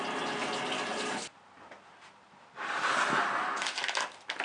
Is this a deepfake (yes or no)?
no